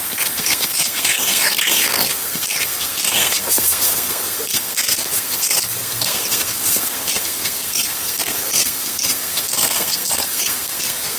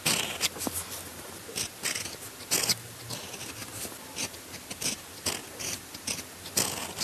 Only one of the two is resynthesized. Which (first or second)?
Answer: first